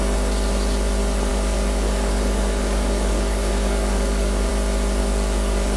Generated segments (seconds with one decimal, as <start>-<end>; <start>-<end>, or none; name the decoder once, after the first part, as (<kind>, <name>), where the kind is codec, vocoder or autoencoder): 1.3-4.5 (codec, DAC); 5.0-5.8